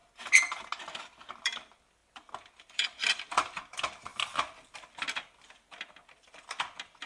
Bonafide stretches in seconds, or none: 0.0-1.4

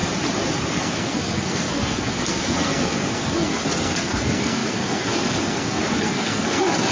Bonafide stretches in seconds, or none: 0.0-0.7

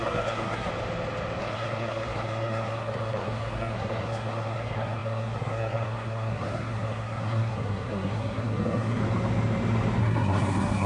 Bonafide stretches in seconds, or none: 0.7-1.4; 9.0-10.0

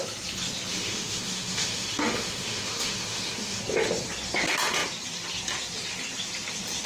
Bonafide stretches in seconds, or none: 0.0-0.7; 3.6-6.9